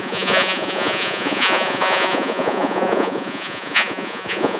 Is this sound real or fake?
fake